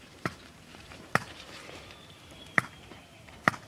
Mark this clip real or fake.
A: fake